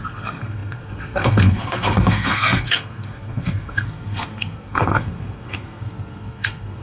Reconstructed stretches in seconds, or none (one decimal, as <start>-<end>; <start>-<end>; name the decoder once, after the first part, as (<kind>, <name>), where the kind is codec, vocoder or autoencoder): 0.0-6.8 (codec, SNAC)